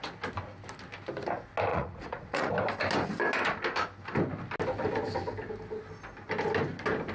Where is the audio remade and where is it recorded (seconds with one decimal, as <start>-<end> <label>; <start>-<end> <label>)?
0.0-1.7 recorded; 1.7-2.5 remade; 2.5-7.1 recorded